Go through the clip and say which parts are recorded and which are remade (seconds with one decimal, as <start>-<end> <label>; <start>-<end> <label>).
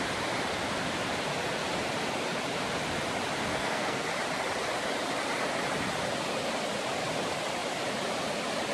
0.0-3.5 recorded; 3.5-4.1 remade; 4.1-8.7 recorded